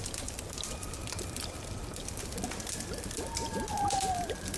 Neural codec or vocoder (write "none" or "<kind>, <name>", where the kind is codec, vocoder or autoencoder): none